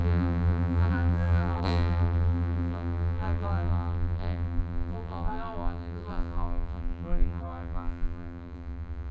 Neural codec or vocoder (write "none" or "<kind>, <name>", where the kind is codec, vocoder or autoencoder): vocoder, BigVGAN v2